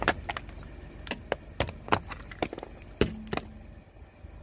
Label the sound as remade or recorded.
recorded